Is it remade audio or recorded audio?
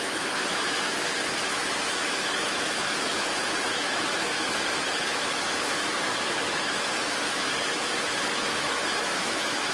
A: remade